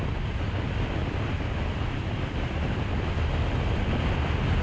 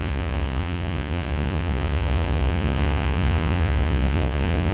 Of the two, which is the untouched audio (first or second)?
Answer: first